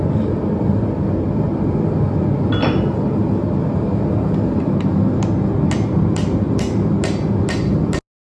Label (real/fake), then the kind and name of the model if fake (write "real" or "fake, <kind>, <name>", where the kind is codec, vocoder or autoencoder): real